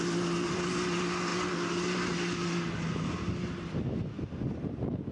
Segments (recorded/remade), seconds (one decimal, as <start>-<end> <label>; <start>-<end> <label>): 0.0-5.1 recorded